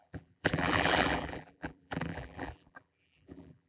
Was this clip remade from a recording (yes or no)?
yes